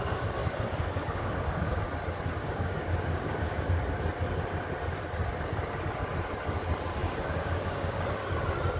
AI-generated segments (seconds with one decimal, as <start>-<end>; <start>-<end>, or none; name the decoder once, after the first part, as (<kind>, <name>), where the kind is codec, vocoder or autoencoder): 0.4-1.8 (codec, DAC); 2.4-3.8; 7.0-8.0